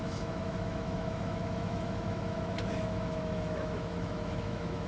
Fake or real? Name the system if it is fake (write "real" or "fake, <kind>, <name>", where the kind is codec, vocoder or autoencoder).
fake, autoencoder, DAC-VAE